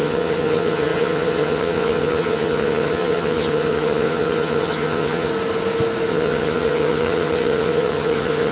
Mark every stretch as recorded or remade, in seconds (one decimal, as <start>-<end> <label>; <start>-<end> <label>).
0.0-5.3 remade; 5.3-6.1 recorded; 6.1-8.5 remade